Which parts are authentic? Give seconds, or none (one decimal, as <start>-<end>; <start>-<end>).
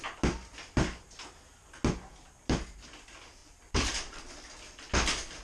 0.0-3.4; 4.3-5.4